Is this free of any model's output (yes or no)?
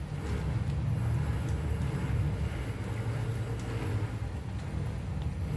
yes